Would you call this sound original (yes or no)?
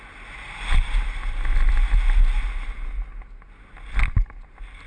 yes